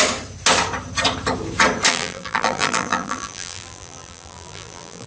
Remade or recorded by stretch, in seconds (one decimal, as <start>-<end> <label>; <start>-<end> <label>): 0.0-1.9 recorded; 1.9-5.1 remade